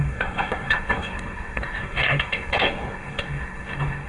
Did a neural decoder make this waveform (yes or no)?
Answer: yes